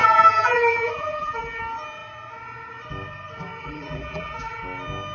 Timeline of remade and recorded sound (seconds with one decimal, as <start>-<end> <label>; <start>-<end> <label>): 0.0-1.6 remade; 1.6-3.6 recorded; 3.6-4.6 remade; 4.6-5.1 recorded